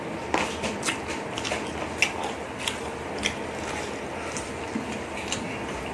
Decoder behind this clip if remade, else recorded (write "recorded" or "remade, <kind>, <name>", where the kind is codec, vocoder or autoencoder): recorded